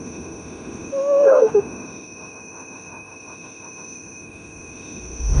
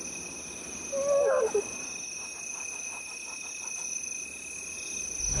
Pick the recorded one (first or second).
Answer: second